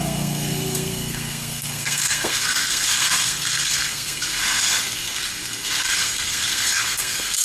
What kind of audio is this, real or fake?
fake